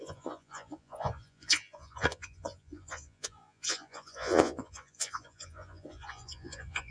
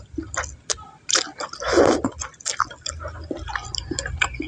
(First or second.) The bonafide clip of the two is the second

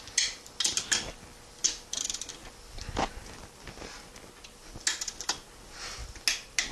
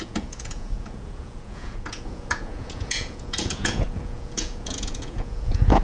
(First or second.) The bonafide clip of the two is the first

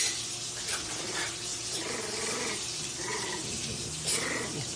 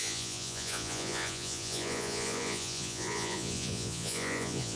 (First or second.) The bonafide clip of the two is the first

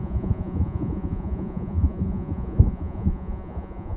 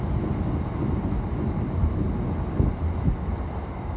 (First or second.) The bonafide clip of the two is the second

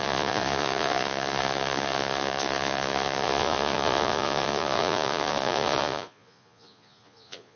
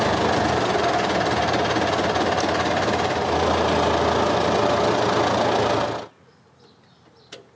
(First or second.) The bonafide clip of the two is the second